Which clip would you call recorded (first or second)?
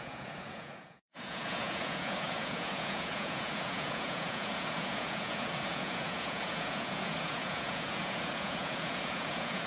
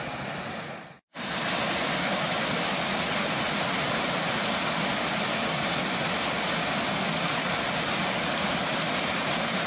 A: second